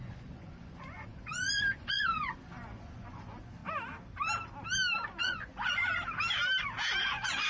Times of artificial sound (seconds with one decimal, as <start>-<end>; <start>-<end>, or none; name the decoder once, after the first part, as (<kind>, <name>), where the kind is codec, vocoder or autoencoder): 0.0-3.6 (vocoder, Vocos); 5.2-5.9; 7.0-7.5